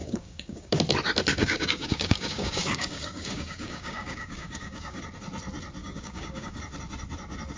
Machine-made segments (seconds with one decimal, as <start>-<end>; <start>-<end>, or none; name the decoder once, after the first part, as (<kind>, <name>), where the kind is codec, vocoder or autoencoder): 0.0-0.8 (codec, DAC); 1.3-5.0; 5.8-6.6